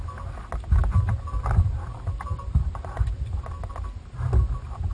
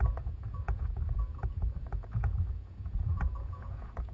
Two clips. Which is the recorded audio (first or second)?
first